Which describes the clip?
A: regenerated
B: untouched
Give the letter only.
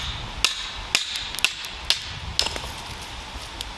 B